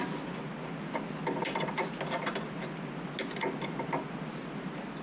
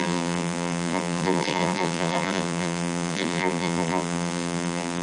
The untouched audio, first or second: first